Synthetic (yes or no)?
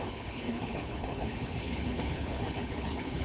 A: yes